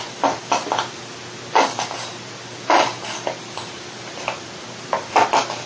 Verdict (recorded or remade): recorded